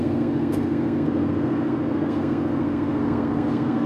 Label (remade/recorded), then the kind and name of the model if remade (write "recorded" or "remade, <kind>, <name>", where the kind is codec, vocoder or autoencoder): remade, codec, SNAC